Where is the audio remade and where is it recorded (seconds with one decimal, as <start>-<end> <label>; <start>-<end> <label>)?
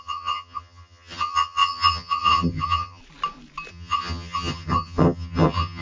0.0-3.0 remade; 3.0-3.7 recorded; 3.7-5.8 remade